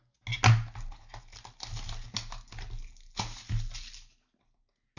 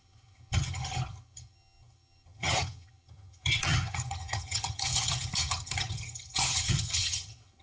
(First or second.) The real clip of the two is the first